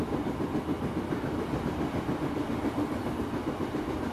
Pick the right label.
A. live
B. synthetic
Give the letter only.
A